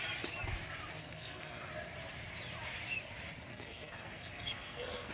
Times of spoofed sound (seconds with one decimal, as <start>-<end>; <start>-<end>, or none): 1.0-1.7; 3.5-5.1